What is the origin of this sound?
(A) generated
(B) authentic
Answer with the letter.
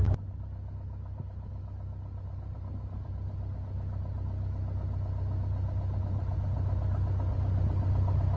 B